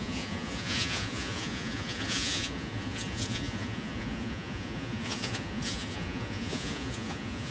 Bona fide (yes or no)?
no